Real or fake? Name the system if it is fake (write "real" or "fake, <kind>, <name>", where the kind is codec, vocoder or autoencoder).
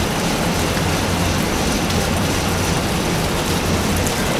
fake, vocoder, BigVGAN v2